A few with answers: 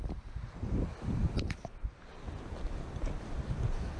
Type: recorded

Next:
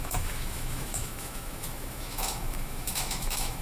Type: remade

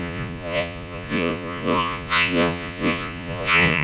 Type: remade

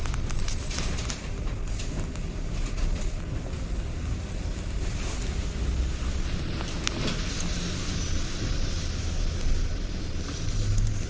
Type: recorded